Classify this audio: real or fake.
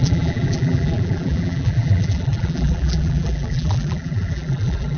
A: fake